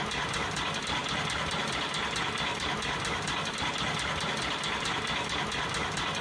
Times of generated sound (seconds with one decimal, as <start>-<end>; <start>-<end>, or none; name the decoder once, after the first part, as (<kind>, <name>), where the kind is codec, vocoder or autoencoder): none